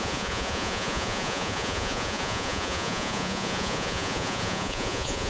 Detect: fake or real fake